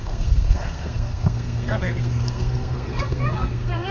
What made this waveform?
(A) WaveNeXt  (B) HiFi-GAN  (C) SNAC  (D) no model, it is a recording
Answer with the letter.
C